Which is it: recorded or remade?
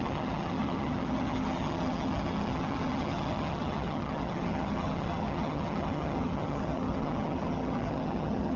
remade